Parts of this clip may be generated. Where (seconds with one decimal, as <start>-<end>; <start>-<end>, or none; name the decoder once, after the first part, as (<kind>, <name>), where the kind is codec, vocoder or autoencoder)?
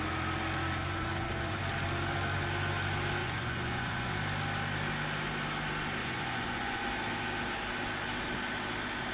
0.8-1.6 (vocoder, Vocos); 3.2-4.1; 6.0-6.8